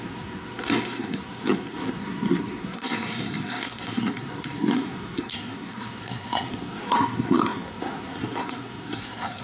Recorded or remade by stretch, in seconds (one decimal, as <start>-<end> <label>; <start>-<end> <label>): 0.0-9.4 remade